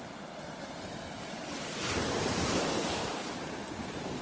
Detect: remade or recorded recorded